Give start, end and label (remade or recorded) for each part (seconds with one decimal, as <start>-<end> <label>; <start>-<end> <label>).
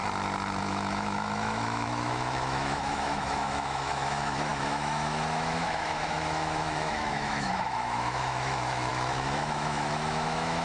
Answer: 0.0-0.6 recorded; 0.6-10.6 remade